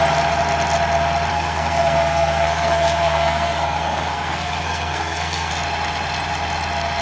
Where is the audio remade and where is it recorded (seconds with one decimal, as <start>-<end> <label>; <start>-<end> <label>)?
0.0-1.3 recorded; 1.3-5.5 remade; 5.5-7.0 recorded